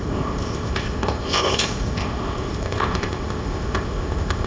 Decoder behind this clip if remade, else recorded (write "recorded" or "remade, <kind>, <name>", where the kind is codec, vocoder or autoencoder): remade, codec, ZipCodec